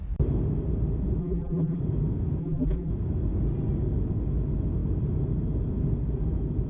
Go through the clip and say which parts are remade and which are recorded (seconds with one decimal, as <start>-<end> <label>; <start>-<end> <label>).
0.0-1.2 recorded; 1.2-1.8 remade; 1.8-2.4 recorded; 2.4-2.9 remade; 2.9-6.7 recorded